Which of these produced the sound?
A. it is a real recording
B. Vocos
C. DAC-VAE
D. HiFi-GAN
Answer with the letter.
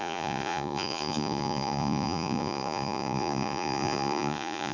B